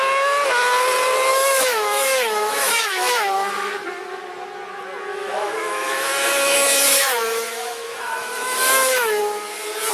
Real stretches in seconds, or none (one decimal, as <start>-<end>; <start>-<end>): 0.0-1.3; 3.7-5.1; 9.2-9.9